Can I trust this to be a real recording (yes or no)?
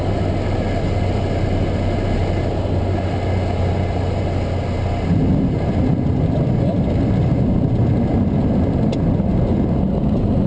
yes